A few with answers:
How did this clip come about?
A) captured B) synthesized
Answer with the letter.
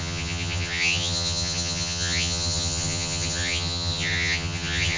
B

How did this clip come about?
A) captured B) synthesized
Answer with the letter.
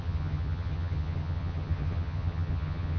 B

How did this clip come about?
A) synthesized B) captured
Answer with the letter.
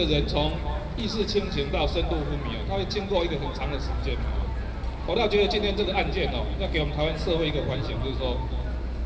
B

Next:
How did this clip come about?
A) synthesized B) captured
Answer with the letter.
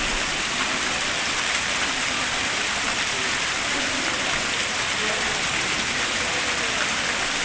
B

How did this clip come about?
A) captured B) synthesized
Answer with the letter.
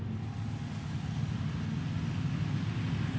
A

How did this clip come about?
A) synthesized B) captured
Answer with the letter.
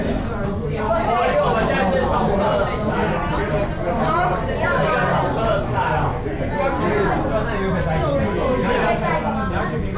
B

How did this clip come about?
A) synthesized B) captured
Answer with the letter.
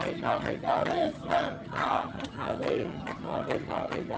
A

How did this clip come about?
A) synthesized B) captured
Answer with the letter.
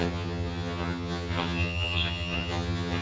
A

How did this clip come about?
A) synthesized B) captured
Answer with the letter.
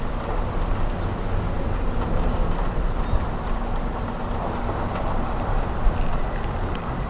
B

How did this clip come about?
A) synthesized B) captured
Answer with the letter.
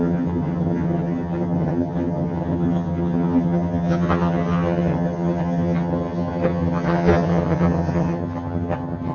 A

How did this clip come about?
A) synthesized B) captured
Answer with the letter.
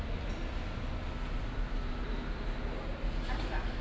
B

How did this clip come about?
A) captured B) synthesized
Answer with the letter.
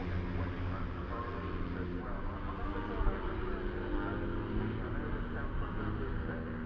A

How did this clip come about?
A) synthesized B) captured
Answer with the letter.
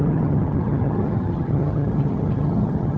A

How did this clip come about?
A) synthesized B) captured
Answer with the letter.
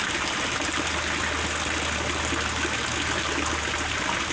B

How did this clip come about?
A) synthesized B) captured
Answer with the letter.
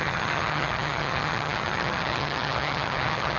A